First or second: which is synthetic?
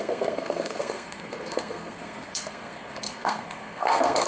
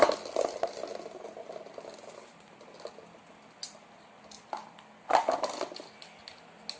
first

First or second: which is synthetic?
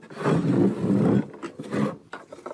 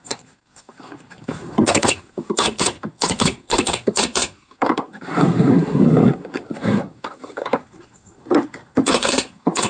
second